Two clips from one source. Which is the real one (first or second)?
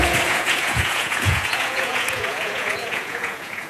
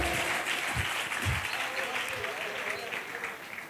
second